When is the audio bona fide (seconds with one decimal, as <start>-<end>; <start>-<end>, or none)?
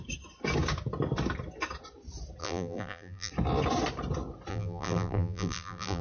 0.0-2.4; 3.3-4.5